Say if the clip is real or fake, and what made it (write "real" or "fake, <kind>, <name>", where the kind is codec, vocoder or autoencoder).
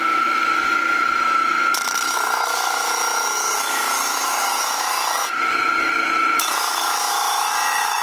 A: fake, autoencoder, DAC-VAE